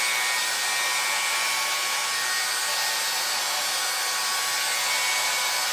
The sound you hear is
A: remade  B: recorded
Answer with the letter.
B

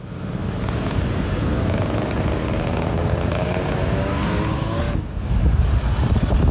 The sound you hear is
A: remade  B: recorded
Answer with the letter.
B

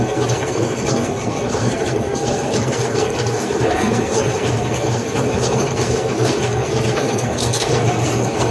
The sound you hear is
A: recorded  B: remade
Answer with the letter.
B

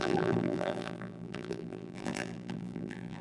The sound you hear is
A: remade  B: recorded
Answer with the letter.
A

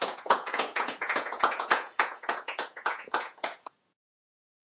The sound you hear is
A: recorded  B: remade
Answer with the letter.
B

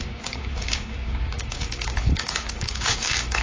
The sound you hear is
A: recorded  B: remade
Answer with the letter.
B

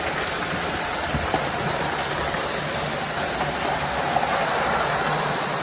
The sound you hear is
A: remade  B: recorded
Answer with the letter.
B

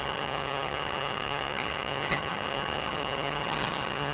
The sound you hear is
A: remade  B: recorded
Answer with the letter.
A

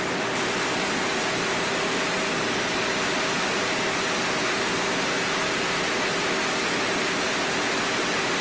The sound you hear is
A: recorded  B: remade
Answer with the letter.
A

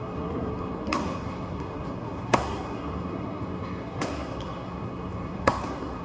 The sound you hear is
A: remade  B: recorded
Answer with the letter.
A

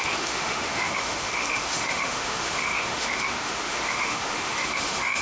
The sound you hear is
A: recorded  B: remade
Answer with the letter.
B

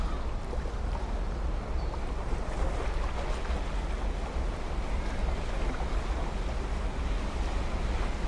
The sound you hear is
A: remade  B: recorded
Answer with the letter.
B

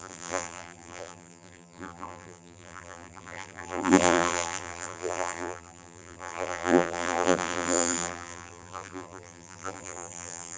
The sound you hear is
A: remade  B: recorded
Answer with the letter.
A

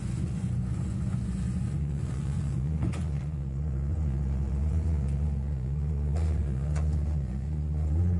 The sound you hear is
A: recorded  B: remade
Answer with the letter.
B